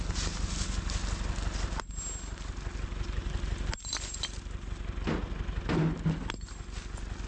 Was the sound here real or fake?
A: real